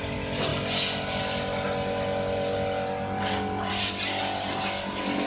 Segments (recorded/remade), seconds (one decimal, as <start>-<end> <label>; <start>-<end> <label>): 0.0-5.3 recorded